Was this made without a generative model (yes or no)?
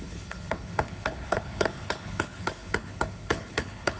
no